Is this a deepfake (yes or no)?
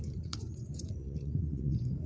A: yes